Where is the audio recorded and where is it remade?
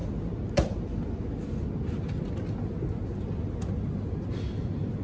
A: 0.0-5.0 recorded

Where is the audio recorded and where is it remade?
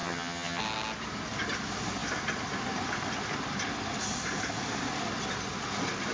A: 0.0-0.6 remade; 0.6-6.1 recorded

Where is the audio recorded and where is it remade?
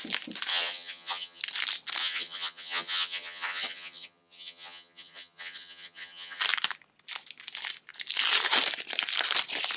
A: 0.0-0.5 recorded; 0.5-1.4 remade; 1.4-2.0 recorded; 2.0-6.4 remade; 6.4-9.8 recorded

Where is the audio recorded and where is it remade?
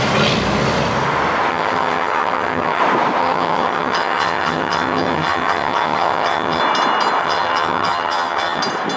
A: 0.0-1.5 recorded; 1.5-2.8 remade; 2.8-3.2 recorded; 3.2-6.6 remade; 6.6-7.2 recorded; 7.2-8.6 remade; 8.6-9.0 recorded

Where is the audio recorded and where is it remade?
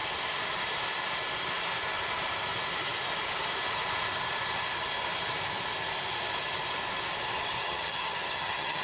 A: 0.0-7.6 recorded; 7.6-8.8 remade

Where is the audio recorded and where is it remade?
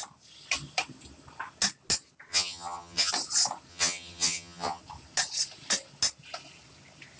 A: 0.0-2.3 recorded; 2.3-3.1 remade; 3.1-3.7 recorded; 3.7-4.8 remade; 4.8-7.2 recorded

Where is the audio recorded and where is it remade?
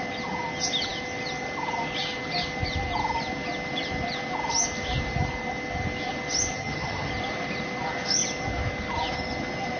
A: 0.0-6.5 recorded; 6.5-7.1 remade; 7.1-9.8 recorded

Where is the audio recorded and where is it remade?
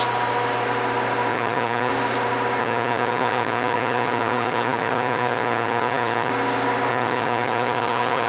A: 0.0-1.3 recorded; 1.3-1.9 remade; 1.9-2.6 recorded; 2.6-6.3 remade; 6.3-6.9 recorded; 6.9-8.3 remade